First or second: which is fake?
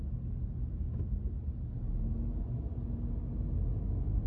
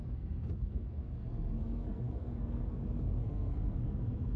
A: second